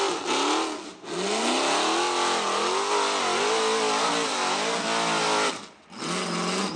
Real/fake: real